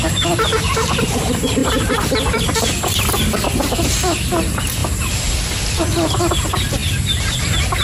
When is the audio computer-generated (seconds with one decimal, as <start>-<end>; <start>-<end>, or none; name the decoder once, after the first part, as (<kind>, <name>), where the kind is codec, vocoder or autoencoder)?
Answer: 1.6-2.5 (vocoder, BigVGAN v2); 4.8-5.8